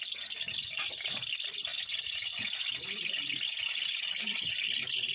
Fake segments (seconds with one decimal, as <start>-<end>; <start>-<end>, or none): none

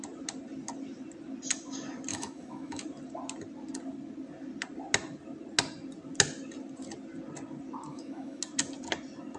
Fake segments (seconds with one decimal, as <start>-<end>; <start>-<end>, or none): 2.1-2.8; 7.9-8.4

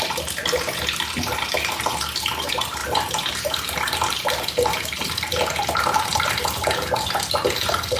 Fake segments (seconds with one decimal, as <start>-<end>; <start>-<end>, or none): none

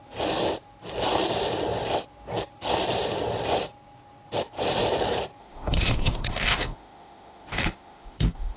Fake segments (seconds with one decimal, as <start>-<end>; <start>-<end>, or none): 5.4-8.6